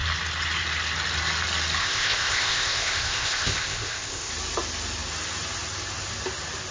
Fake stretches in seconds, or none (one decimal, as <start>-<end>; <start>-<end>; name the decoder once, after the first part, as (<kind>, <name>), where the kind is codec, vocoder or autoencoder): 1.8-4.3 (codec, ZipCodec)